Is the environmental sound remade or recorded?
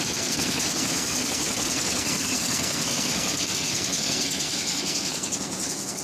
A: remade